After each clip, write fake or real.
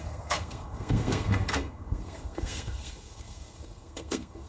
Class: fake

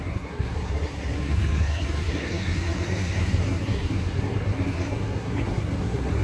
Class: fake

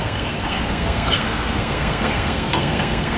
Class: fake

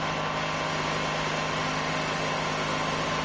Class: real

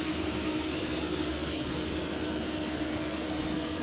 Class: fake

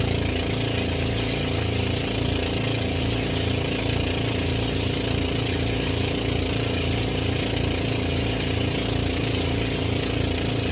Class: real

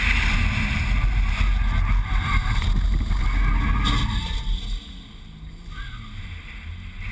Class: real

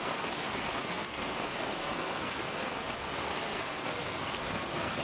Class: fake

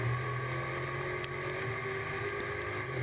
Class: real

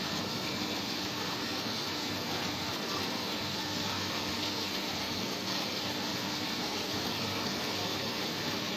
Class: fake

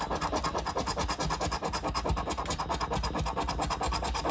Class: real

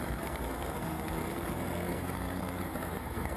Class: fake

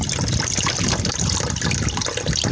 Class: real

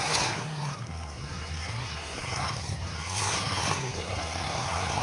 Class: fake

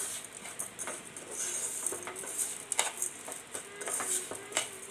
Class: real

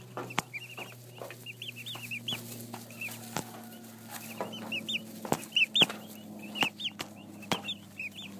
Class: real